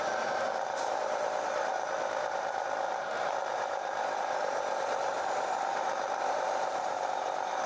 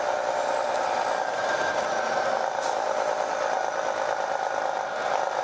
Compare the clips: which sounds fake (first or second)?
first